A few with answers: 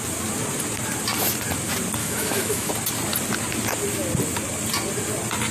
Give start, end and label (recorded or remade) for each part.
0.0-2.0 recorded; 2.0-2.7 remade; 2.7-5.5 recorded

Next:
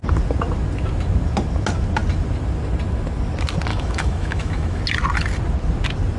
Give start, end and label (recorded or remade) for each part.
0.0-3.7 recorded; 3.7-4.8 remade; 4.8-6.2 recorded

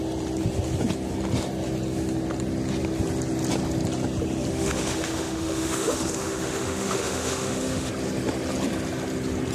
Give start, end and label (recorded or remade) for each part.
0.0-4.5 recorded; 4.5-7.9 remade; 7.9-9.5 recorded

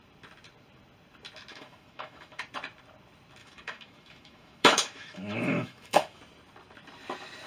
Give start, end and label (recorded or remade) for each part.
0.0-1.5 recorded; 1.5-2.4 remade; 2.4-3.4 recorded; 3.4-6.2 remade; 6.2-7.5 recorded

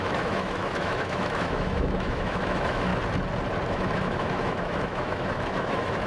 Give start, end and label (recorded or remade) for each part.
0.0-2.9 remade; 2.9-3.7 recorded; 3.7-6.1 remade